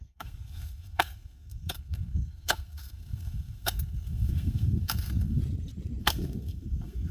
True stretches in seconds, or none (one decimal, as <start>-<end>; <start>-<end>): 5.4-6.0